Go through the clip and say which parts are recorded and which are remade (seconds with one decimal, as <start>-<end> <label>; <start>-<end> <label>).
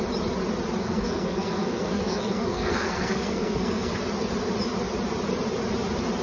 0.0-0.8 recorded; 0.8-3.9 remade; 3.9-6.2 recorded